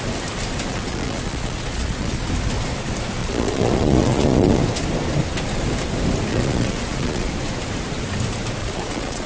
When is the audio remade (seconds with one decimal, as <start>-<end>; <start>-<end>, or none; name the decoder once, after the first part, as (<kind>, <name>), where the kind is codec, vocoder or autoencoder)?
0.7-2.2 (vocoder, Vocos); 3.2-4.6; 6.3-7.3; 8.6-9.3